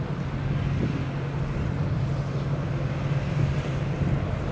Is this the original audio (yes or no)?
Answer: yes